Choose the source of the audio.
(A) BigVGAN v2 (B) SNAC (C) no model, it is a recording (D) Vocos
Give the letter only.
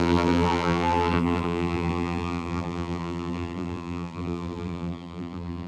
A